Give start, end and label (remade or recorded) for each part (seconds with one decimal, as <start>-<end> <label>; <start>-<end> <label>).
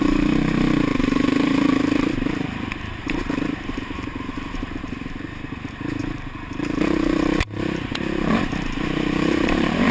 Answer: 0.0-0.9 recorded; 0.9-5.1 remade; 5.1-6.0 recorded; 6.0-9.9 remade